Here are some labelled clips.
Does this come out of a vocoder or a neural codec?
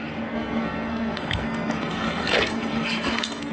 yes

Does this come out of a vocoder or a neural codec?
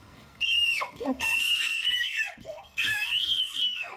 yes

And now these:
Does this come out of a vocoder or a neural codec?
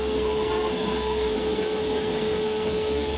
yes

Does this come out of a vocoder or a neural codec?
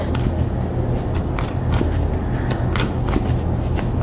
no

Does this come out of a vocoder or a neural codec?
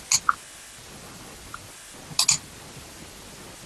no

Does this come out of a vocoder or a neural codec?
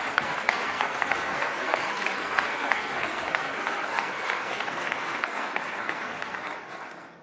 yes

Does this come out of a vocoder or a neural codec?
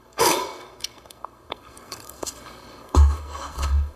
yes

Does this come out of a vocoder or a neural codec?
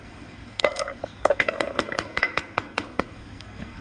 yes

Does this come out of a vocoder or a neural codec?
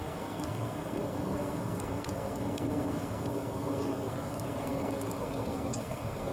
yes